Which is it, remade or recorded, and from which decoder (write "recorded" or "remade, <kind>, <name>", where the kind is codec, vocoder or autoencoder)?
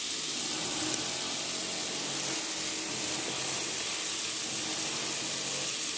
recorded